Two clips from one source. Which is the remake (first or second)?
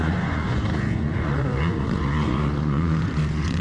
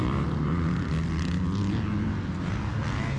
first